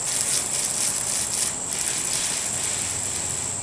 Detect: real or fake real